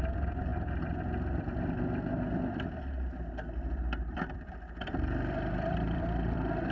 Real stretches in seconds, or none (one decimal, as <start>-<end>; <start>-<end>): none